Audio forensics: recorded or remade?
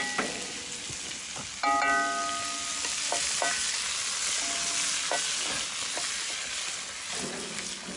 recorded